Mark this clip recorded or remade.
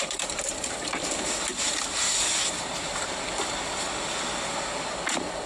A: remade